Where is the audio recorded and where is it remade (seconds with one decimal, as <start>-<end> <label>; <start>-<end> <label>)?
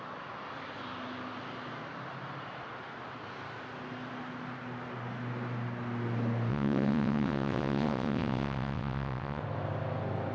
0.0-6.5 recorded; 6.5-9.4 remade; 9.4-10.3 recorded